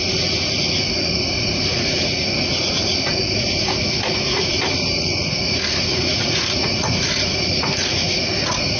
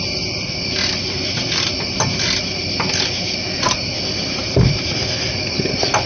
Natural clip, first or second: second